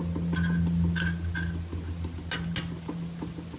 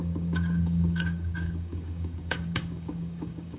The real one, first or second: first